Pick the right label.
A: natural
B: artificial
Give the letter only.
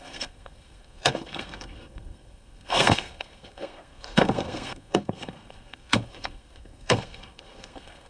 B